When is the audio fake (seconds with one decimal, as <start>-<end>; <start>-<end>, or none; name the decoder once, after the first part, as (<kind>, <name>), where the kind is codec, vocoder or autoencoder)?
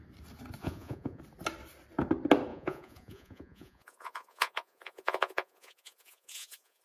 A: 0.6-1.2 (vocoder, Vocos); 2.5-6.8